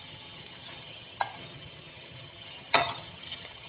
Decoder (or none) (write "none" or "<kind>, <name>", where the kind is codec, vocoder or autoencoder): vocoder, HiFi-GAN